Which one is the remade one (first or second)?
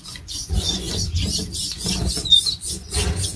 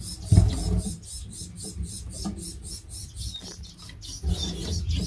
first